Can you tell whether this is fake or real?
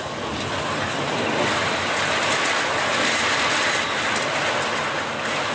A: real